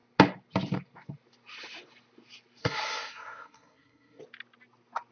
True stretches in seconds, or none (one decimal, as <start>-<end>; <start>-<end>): 0.0-2.6; 4.2-5.1